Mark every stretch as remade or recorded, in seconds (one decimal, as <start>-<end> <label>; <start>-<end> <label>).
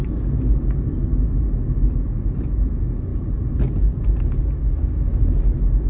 0.0-5.9 recorded